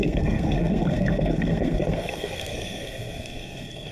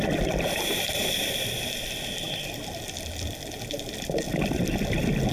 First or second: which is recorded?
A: second